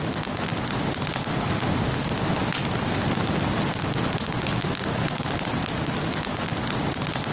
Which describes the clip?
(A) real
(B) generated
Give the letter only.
A